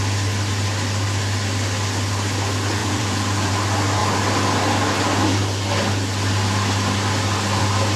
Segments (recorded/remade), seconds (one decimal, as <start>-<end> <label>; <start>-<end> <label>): 0.0-2.8 recorded; 2.8-3.5 remade; 3.5-8.0 recorded